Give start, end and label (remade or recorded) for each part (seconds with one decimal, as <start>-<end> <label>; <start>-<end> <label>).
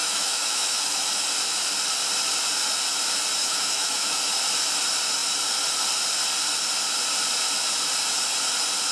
0.0-1.1 remade; 1.1-3.4 recorded; 3.4-4.2 remade; 4.2-8.9 recorded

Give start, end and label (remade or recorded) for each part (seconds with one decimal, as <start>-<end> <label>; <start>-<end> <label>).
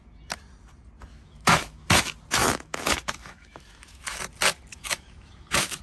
0.0-1.1 recorded; 1.1-1.9 remade; 1.9-2.4 recorded; 2.4-4.2 remade; 4.2-4.7 recorded; 4.7-5.8 remade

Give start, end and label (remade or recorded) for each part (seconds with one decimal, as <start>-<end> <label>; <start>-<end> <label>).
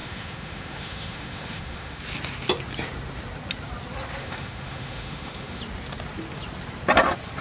0.0-2.0 remade; 2.0-4.2 recorded; 4.2-5.6 remade; 5.6-7.4 recorded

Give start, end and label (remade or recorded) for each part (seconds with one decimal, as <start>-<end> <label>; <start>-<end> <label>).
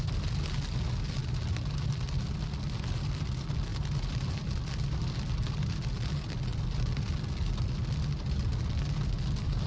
0.0-9.7 recorded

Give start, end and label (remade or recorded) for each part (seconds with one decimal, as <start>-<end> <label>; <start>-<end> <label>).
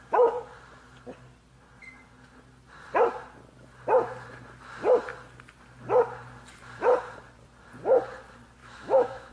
0.0-8.6 recorded; 8.6-9.3 remade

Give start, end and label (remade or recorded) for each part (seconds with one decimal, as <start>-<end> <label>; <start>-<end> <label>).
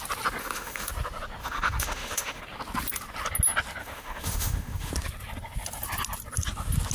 0.0-0.4 recorded; 0.4-0.9 remade; 0.9-1.4 recorded; 1.4-2.4 remade; 2.4-3.8 recorded; 3.8-4.9 remade; 4.9-6.9 recorded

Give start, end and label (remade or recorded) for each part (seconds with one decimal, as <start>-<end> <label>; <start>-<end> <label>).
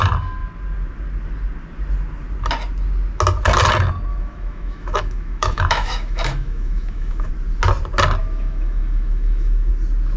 0.0-4.1 recorded; 4.1-7.3 remade; 7.3-8.2 recorded; 8.2-9.7 remade; 9.7-10.2 recorded